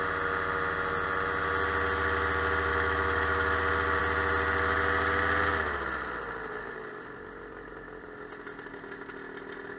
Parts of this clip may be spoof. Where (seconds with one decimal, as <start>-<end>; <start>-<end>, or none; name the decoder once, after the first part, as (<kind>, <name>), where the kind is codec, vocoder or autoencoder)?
2.7-3.6 (autoencoder, DAC-VAE)